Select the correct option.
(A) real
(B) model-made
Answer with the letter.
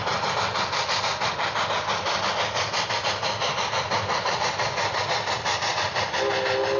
A